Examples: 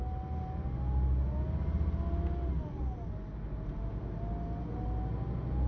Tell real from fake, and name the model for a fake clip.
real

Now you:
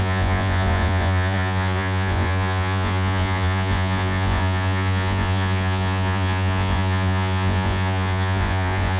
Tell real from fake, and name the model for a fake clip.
fake, vocoder, Vocos